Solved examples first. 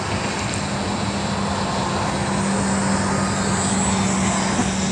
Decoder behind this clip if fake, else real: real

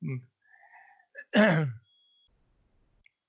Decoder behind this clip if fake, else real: real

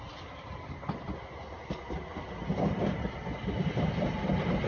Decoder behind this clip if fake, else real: real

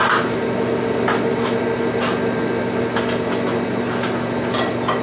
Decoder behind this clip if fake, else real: real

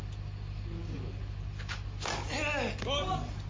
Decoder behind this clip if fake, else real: real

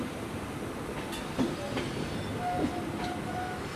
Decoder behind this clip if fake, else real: real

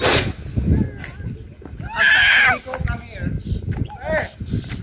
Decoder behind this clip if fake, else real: real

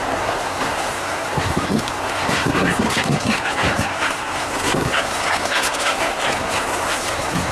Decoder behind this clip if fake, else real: fake, codec, SNAC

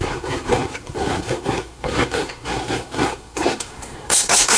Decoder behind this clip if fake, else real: fake, codec, SNAC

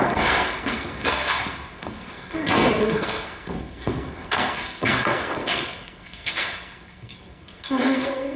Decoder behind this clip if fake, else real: fake, codec, SNAC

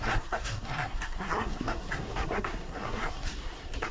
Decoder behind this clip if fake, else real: fake, codec, SNAC